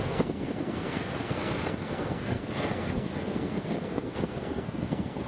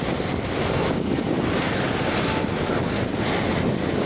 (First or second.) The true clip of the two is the second